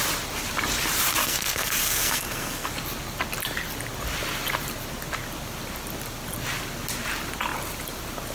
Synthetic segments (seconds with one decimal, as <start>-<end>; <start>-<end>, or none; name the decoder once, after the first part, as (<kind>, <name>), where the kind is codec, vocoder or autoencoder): 1.2-2.7 (codec, SNAC)